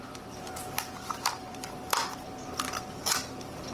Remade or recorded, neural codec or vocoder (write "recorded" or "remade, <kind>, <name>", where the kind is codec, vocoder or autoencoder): remade, vocoder, BigVGAN v2